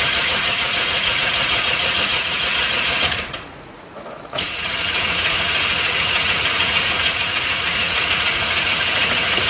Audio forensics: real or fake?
fake